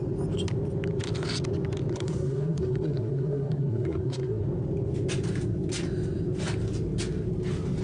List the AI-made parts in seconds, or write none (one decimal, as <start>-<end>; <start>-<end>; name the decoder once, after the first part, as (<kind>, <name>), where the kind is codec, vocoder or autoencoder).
1.9-4.4 (codec, SNAC)